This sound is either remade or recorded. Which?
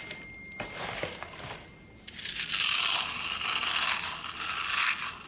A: recorded